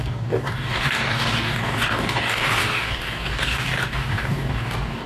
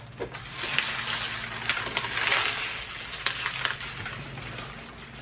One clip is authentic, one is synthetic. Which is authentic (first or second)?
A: second